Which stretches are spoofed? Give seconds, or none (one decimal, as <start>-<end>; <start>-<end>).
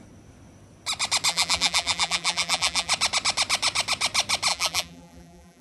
1.3-2.9; 4.5-5.6